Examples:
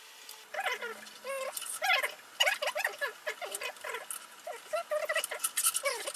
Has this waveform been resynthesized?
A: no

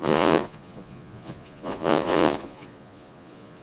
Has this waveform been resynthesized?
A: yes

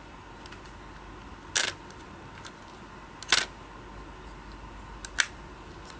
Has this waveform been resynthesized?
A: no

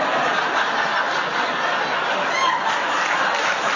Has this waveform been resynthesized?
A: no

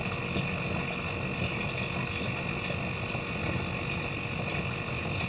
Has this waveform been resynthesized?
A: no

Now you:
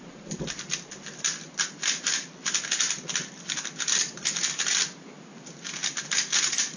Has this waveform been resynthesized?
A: no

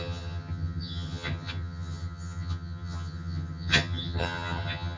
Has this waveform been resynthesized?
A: yes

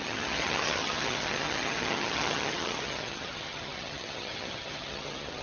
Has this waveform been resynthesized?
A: yes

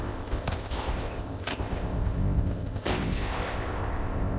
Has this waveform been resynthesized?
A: yes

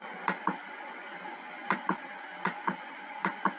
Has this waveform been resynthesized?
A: yes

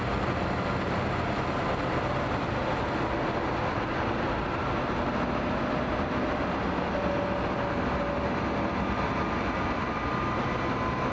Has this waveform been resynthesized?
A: no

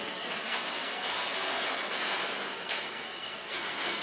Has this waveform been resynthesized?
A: yes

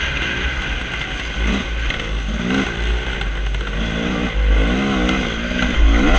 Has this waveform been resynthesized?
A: no